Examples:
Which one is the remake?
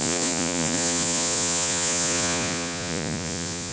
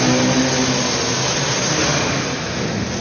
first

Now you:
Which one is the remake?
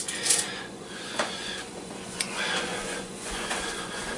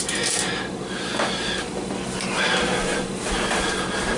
first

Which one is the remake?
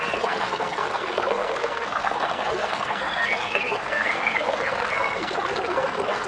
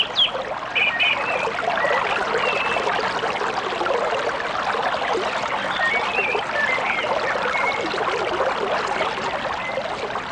first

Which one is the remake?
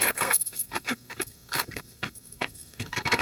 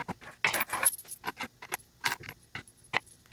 first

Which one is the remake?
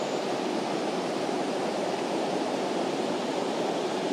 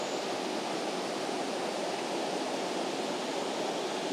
first